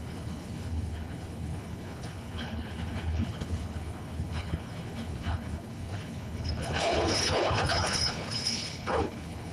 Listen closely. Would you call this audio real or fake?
fake